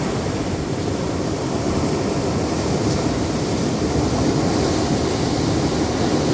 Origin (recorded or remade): recorded